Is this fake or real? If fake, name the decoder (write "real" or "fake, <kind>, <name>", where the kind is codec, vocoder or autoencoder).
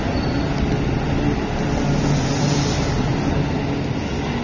real